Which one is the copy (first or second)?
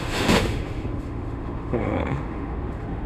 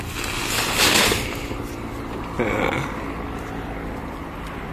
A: first